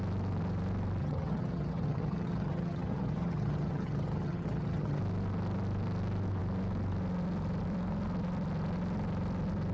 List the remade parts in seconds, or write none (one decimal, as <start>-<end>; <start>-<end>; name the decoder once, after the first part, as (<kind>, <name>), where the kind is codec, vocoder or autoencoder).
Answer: 1.0-5.0 (vocoder, HiFi-GAN)